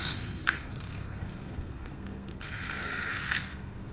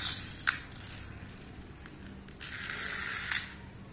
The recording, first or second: second